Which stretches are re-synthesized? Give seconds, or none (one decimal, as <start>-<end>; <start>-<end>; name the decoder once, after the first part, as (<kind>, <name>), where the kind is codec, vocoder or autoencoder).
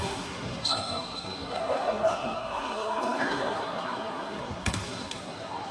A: 0.0-5.7 (codec, SNAC)